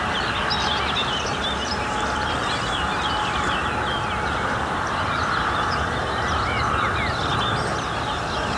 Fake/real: real